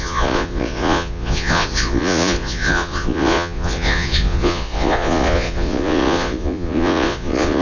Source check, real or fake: fake